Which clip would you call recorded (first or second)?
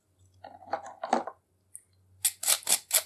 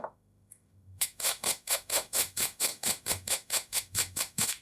first